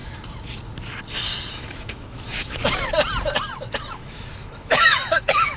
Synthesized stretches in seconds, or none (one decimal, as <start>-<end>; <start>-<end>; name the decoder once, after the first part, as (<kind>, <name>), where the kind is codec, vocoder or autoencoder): 1.5-2.6 (autoencoder, DAC-VAE); 3.9-5.6